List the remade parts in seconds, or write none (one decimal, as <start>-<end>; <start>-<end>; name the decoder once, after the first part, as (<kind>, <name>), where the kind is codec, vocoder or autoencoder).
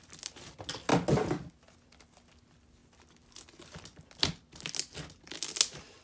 none